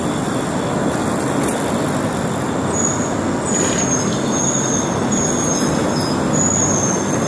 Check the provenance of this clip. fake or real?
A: real